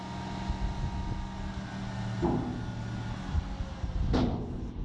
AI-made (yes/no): no